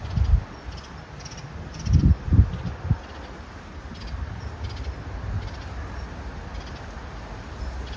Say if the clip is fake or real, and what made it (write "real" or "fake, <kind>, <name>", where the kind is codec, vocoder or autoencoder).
real